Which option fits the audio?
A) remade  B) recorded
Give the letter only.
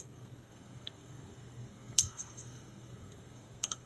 A